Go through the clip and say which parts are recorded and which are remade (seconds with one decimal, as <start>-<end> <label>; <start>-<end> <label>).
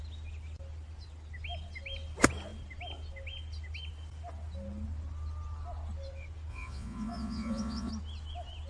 0.0-6.5 recorded; 6.5-7.9 remade; 7.9-8.7 recorded